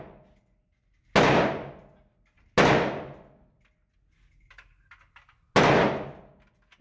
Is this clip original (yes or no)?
yes